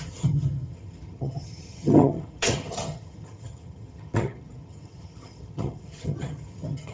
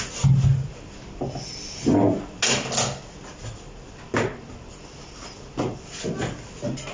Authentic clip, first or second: second